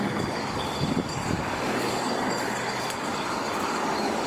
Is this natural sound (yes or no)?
no